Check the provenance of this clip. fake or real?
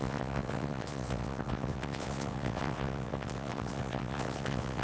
fake